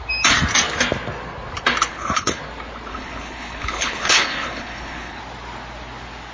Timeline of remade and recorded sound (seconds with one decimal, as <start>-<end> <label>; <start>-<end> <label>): 0.0-1.9 recorded; 1.9-2.4 remade; 2.4-2.9 recorded; 2.9-5.2 remade; 5.2-6.3 recorded